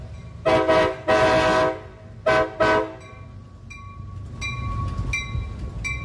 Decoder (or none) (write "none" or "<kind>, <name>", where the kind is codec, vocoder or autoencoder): none